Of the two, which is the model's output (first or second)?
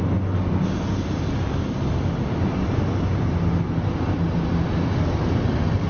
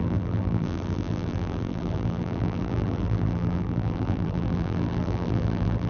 second